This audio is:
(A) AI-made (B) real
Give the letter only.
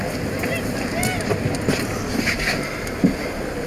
B